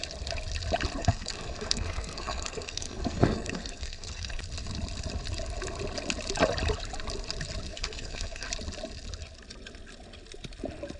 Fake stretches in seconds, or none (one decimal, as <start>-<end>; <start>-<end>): 1.0-4.4; 7.7-8.5